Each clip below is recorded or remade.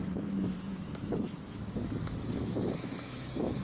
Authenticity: remade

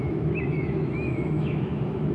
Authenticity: remade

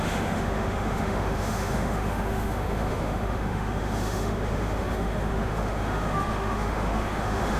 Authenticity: remade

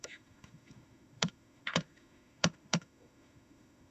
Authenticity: remade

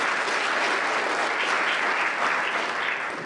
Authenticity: recorded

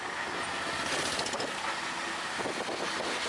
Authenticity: recorded